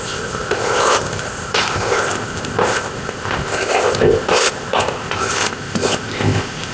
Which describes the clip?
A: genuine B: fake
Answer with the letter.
B